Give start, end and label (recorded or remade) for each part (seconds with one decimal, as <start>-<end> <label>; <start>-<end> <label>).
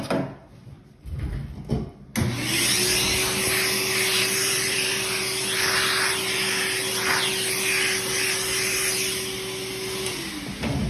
0.0-4.1 recorded; 4.1-5.2 remade; 5.2-10.9 recorded